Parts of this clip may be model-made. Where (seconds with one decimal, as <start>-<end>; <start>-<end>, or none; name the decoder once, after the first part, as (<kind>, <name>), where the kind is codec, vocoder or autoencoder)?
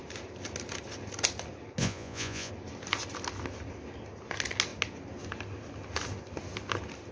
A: 1.8-2.5 (vocoder, Vocos)